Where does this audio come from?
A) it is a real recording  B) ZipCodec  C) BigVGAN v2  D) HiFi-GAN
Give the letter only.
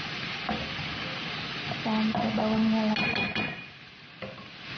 A